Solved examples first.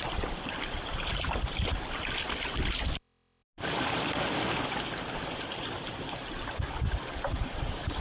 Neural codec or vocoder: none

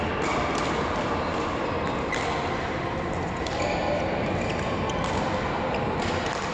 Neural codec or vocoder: none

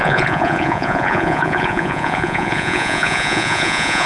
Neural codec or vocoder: vocoder, Vocos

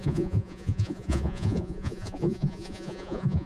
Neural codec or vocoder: vocoder, Vocos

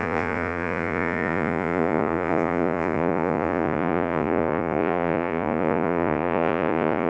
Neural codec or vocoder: vocoder, Vocos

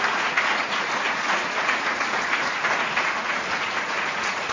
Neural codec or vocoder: vocoder, Vocos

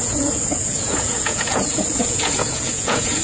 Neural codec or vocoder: vocoder, Vocos